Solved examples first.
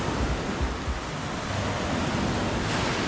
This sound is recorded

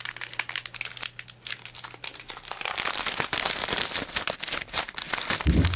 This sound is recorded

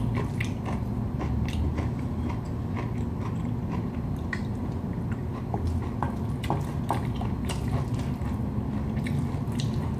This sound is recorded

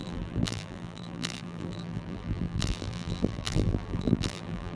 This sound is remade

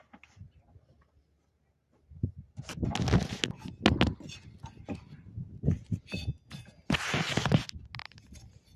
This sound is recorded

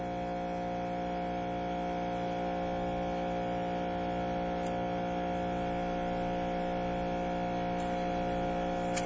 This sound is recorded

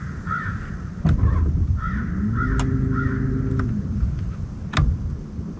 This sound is recorded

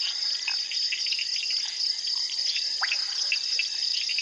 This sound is recorded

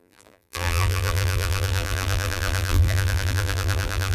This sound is remade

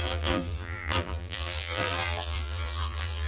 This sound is remade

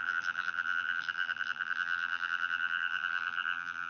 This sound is remade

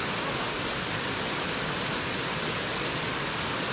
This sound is recorded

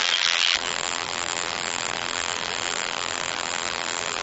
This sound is remade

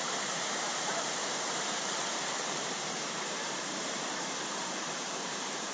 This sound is remade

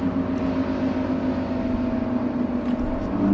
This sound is recorded